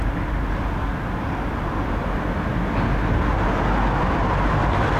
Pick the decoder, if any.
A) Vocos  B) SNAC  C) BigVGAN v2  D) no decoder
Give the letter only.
D